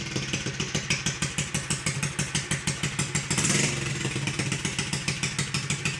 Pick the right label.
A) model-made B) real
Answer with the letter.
B